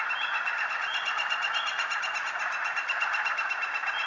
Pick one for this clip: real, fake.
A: real